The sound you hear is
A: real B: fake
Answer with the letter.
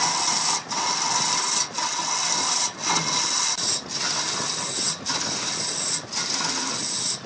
A